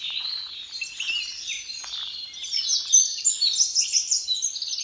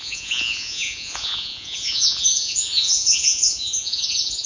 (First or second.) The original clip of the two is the first